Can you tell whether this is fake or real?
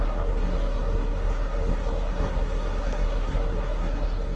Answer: fake